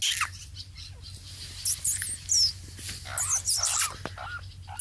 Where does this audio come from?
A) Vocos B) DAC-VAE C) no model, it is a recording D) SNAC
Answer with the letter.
C